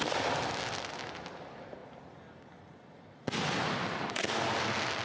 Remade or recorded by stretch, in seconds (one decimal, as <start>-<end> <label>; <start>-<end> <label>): 0.0-5.0 recorded